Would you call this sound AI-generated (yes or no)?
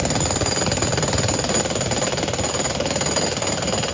no